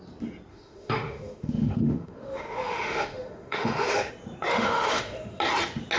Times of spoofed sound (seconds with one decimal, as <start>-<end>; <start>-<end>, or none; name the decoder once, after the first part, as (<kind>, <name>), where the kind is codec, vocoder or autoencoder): 0.5-4.1 (autoencoder, DAC-VAE); 4.5-5.4